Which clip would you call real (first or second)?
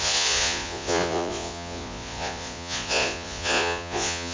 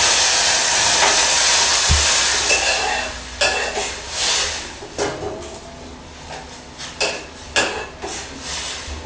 second